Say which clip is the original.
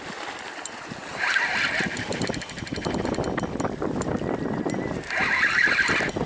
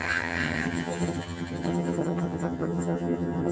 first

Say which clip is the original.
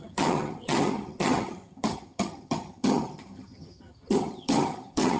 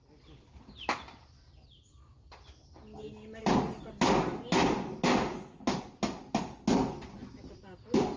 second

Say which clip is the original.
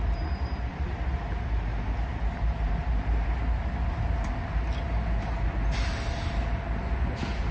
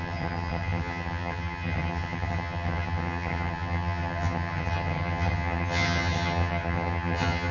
first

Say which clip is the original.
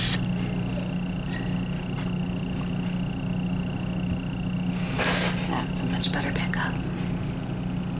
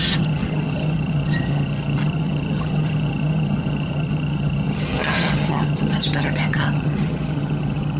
first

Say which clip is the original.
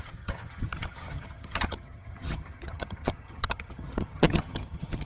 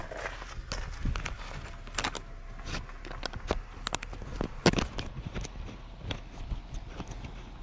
second